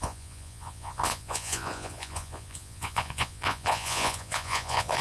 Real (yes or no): no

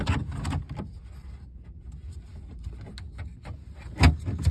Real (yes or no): yes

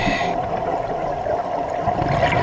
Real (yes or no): yes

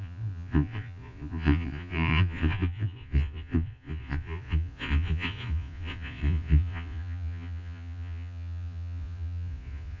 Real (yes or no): no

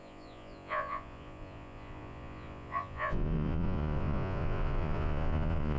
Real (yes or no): no